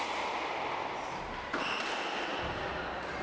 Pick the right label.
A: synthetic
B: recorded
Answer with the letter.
B